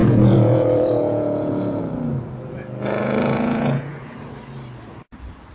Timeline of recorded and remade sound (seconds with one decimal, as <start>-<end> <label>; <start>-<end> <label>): 0.0-1.8 remade; 1.8-3.0 recorded; 3.0-4.1 remade; 4.1-5.5 recorded